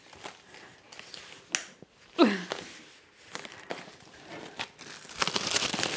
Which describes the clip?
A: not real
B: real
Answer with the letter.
B